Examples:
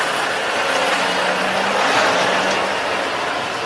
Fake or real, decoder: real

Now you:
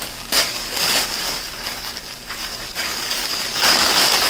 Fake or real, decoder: fake, codec, DAC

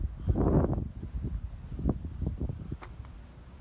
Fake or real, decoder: real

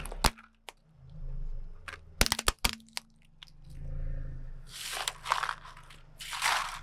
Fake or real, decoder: real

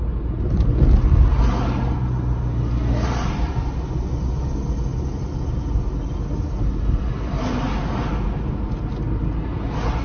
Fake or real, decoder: real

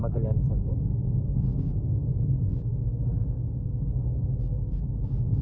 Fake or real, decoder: fake, codec, DAC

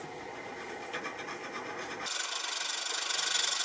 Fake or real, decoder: real